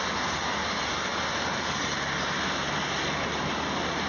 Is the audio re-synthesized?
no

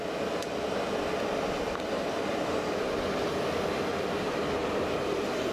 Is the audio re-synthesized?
no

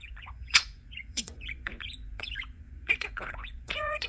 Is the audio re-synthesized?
yes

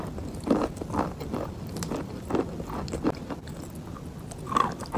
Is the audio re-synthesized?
no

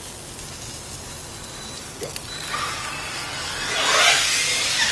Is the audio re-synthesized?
no